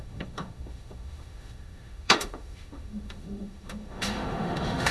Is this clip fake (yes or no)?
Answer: yes